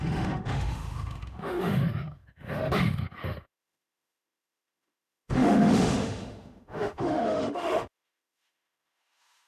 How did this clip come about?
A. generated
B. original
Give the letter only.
A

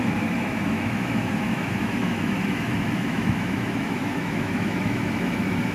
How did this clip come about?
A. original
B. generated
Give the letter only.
B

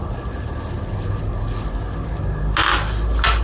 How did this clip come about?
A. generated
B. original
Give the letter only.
B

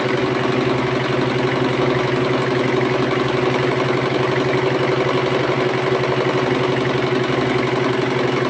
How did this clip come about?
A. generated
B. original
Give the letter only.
B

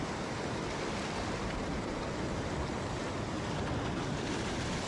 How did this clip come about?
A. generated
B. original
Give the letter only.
B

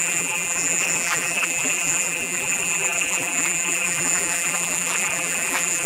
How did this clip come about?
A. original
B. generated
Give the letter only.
B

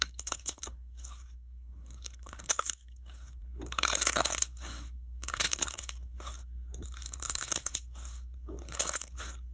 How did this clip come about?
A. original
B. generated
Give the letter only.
B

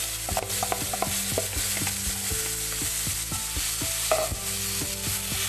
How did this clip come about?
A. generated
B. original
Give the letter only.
B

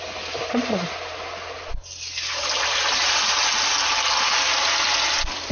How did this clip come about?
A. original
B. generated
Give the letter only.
A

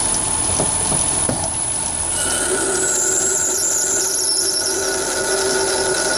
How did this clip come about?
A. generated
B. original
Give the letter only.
A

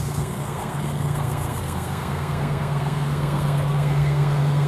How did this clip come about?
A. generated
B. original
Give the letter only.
A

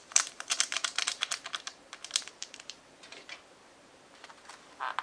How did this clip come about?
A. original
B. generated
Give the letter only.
B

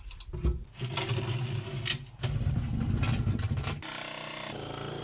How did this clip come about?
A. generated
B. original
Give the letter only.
B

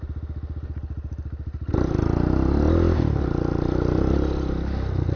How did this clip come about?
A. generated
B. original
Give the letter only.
B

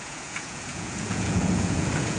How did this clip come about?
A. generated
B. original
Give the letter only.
A